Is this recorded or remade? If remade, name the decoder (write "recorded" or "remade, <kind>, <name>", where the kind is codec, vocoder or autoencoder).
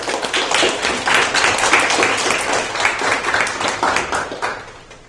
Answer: recorded